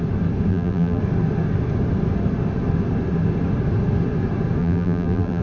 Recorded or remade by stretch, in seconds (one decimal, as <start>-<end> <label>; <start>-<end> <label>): 0.0-0.5 recorded; 0.5-1.0 remade; 1.0-4.6 recorded; 4.6-5.4 remade